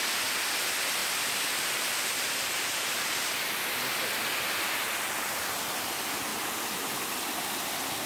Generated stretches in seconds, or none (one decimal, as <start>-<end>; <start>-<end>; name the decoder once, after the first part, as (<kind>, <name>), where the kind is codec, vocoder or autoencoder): 1.0-4.2 (vocoder, BigVGAN v2)

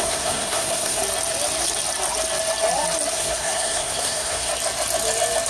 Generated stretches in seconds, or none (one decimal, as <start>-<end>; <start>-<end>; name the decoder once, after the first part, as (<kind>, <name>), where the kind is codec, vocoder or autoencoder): 0.0-1.0 (codec, SNAC); 3.1-4.5

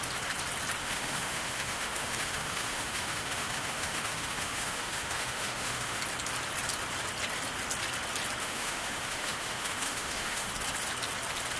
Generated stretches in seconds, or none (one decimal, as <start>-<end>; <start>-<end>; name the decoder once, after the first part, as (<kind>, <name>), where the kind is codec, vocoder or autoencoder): 0.8-6.0 (autoencoder, DAC-VAE); 8.4-10.5

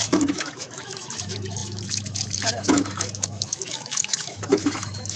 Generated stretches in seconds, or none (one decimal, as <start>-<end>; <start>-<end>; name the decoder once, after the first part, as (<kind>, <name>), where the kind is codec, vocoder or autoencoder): 0.0-5.2 (autoencoder, DAC-VAE)

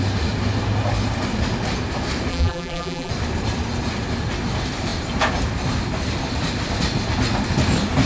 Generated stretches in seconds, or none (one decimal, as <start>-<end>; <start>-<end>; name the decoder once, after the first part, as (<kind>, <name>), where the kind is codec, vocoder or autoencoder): 2.3-3.1 (vocoder, BigVGAN v2)

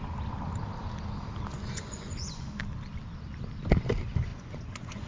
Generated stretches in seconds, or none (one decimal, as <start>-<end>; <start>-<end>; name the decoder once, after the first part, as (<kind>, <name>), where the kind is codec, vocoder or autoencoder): 1.5-2.6 (vocoder, Vocos); 4.3-5.1

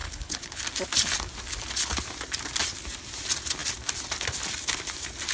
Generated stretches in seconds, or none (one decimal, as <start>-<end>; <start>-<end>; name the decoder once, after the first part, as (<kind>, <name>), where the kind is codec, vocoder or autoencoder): 0.0-0.6 (codec, HILCodec)

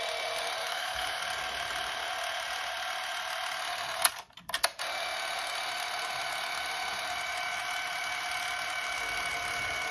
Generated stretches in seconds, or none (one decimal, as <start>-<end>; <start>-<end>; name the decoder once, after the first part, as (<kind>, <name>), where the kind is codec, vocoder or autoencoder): 0.6-1.2 (autoencoder, DAC-VAE)